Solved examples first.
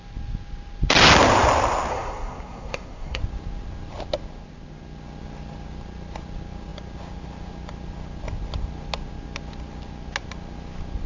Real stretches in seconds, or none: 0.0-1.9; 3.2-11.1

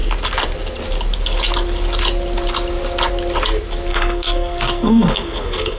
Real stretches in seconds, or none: 0.0-3.9

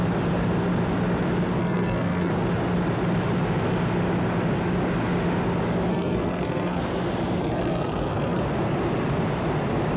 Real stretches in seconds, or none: 0.0-1.6; 2.3-5.9; 6.8-7.4; 8.4-10.0

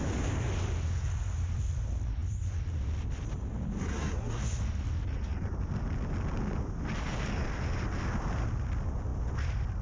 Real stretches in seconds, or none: 0.0-3.8; 4.4-9.8

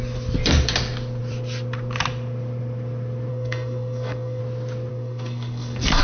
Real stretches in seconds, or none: 0.0-3.3; 4.4-4.9